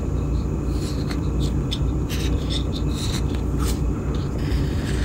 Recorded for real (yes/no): no